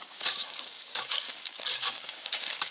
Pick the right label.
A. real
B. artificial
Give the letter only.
B